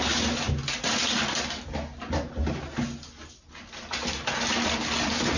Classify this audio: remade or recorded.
recorded